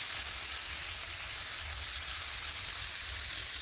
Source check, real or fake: real